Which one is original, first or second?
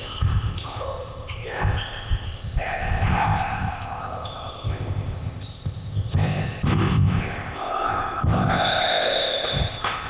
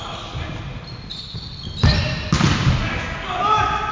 second